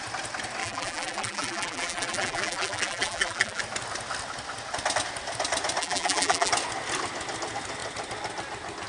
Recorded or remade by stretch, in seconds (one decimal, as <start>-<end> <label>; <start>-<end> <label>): 0.0-0.6 recorded; 0.6-3.6 remade; 3.6-5.8 recorded; 5.8-6.5 remade; 6.5-8.9 recorded